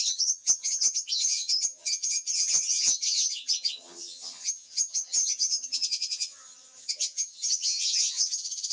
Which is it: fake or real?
fake